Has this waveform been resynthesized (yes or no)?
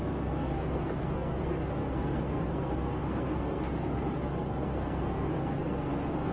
yes